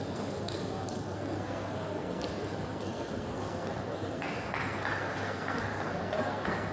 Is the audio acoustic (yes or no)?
no